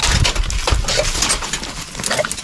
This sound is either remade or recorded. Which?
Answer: recorded